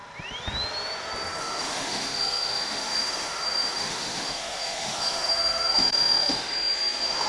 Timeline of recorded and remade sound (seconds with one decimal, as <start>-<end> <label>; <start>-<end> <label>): 0.0-1.4 recorded; 1.4-7.3 remade